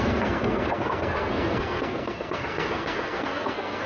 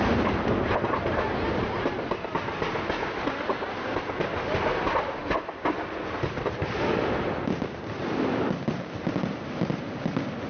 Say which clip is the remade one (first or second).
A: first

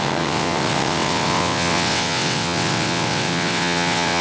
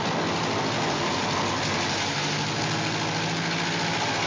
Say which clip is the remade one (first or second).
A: first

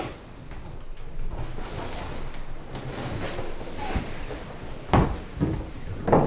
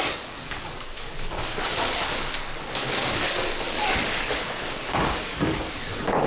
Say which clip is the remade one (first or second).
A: second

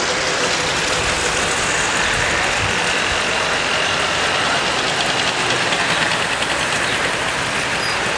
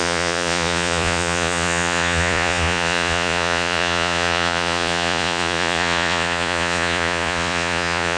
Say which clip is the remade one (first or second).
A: second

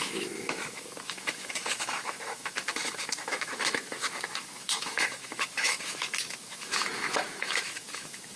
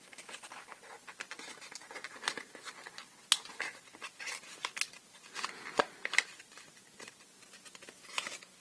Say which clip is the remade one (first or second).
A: first